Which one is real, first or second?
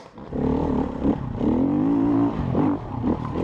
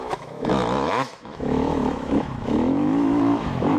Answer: first